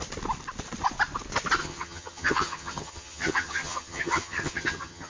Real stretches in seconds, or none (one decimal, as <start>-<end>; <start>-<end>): 0.0-1.6